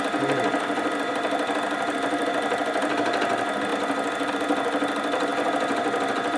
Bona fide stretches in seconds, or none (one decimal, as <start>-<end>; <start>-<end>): 0.0-6.4